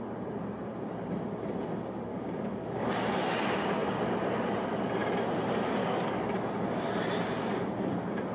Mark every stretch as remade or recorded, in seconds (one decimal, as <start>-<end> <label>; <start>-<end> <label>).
0.0-2.1 recorded; 2.1-2.9 remade; 2.9-5.8 recorded; 5.8-6.4 remade; 6.4-8.3 recorded